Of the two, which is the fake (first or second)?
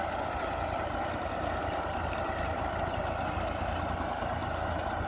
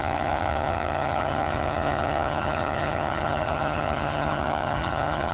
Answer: second